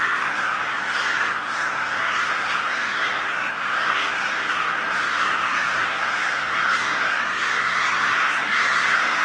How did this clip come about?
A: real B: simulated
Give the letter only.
B